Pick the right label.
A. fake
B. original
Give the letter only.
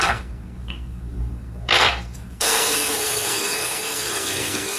A